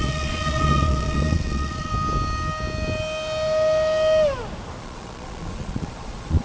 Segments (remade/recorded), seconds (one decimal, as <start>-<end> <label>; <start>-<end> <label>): 0.0-1.9 remade; 1.9-4.8 recorded; 4.8-6.4 remade